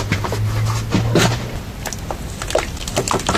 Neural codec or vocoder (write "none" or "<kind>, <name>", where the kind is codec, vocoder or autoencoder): none